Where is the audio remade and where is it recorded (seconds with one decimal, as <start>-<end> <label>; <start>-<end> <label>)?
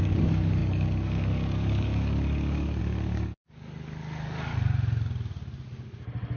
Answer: 0.0-4.5 remade; 4.5-6.4 recorded